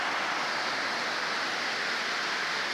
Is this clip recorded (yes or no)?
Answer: yes